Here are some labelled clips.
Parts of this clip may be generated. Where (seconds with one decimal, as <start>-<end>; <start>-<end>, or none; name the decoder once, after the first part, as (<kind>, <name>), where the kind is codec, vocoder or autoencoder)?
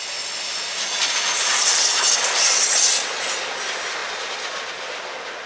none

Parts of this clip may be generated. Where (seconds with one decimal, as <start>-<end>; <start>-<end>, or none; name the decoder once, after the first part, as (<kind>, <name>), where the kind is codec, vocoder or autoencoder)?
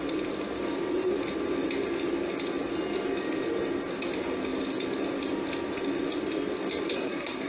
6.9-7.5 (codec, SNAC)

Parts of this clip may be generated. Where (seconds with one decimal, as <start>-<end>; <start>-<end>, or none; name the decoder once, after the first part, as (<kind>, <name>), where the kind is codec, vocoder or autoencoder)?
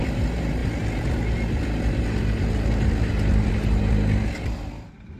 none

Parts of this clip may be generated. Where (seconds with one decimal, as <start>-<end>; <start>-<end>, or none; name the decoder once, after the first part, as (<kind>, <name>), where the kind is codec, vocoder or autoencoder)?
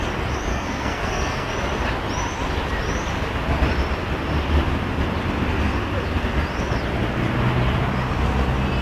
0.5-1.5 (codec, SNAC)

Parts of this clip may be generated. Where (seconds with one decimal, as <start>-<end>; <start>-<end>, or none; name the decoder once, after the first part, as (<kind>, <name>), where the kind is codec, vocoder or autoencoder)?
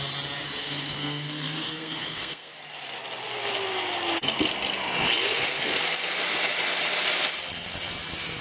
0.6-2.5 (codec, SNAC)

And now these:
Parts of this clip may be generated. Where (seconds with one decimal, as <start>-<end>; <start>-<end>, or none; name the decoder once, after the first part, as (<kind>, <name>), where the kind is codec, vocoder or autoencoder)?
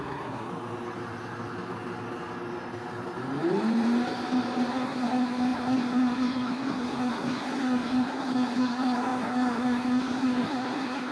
0.0-0.5 (codec, SNAC); 4.7-11.1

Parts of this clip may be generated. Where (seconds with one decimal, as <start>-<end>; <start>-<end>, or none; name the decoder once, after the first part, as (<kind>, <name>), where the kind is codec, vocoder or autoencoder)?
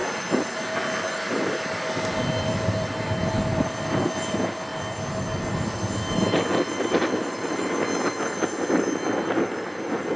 none